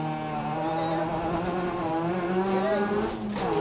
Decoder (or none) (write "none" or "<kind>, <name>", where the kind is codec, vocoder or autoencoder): none